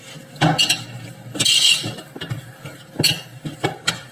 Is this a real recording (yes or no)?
yes